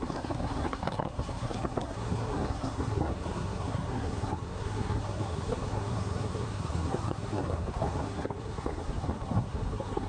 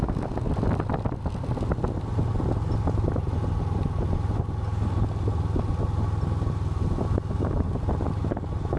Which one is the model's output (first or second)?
first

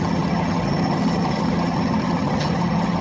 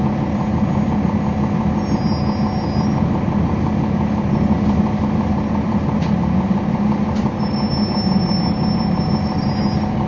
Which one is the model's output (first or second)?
first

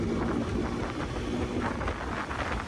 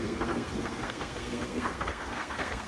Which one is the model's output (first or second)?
second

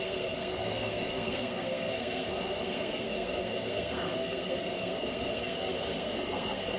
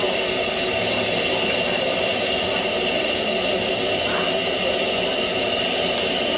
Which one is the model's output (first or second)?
first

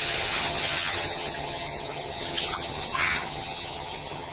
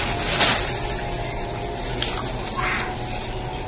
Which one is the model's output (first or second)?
first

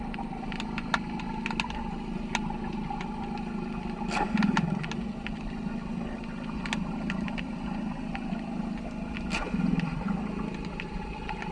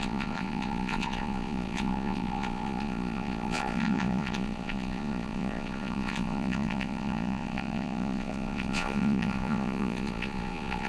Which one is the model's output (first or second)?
second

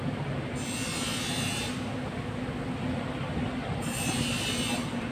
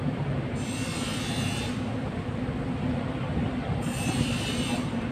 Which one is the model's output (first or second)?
second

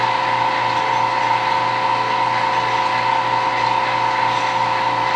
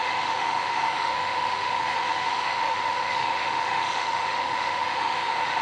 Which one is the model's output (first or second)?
second